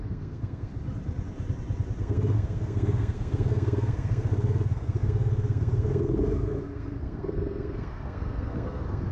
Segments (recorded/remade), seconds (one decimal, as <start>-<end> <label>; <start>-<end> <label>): 0.0-0.7 remade; 0.7-2.0 recorded; 2.0-9.1 remade